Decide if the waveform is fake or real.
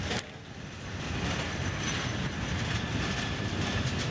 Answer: real